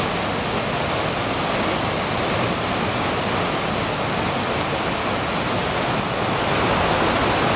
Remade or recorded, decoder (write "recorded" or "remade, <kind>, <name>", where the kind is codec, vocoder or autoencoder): recorded